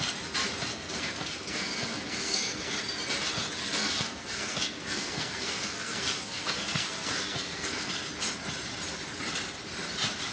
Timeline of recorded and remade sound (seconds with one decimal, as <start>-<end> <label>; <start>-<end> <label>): 0.0-0.7 recorded; 0.7-2.8 remade; 2.8-3.6 recorded; 3.6-7.9 remade; 7.9-10.3 recorded